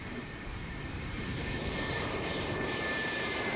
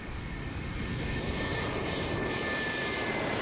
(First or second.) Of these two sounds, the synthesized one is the first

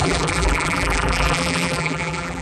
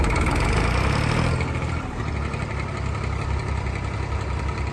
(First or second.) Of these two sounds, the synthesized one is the first